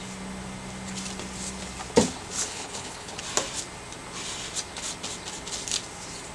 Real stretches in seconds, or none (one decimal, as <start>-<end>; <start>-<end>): 0.0-2.5; 3.2-6.3